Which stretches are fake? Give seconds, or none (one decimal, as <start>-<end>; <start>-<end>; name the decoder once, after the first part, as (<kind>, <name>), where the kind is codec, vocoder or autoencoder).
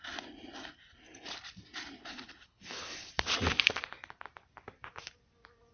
2.0-3.1 (codec, HILCodec)